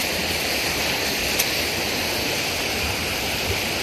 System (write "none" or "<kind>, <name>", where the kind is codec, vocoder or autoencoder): vocoder, BigVGAN v2